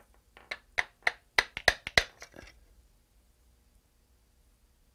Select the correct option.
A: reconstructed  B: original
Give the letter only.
B